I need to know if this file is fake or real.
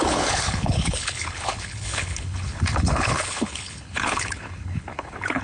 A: fake